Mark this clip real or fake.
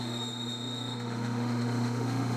fake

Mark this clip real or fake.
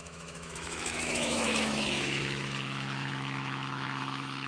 fake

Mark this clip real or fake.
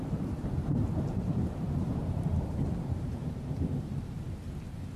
fake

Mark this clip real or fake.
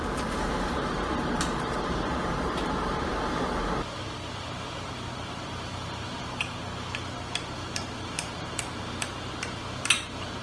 fake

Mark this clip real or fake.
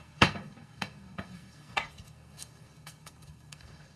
fake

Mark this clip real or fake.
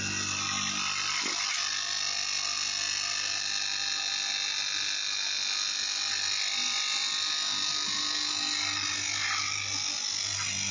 real